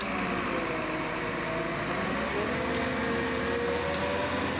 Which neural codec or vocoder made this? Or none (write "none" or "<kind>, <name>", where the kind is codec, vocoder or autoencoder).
none